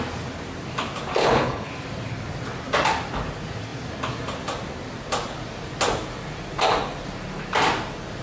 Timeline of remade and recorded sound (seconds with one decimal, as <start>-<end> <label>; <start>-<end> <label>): 0.0-1.2 recorded; 1.2-1.7 remade; 1.7-8.2 recorded